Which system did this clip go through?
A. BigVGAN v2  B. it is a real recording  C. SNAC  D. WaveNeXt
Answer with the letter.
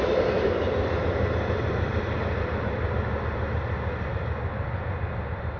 B